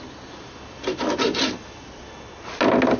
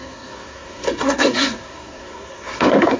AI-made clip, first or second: second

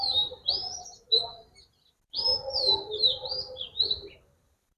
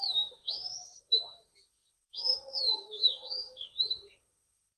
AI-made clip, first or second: second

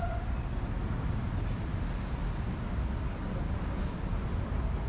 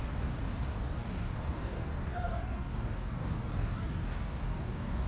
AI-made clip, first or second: second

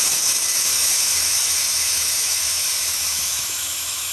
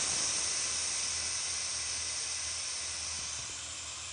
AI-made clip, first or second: first